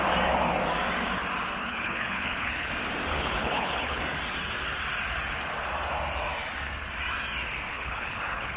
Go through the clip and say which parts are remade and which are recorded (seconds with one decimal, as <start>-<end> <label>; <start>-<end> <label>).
0.0-1.6 recorded; 1.6-2.7 remade; 2.7-3.1 recorded; 3.1-4.0 remade; 4.0-7.7 recorded; 7.7-8.6 remade